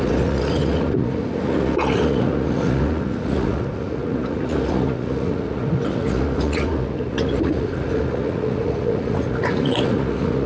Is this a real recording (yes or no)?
no